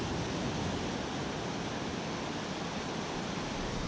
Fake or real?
real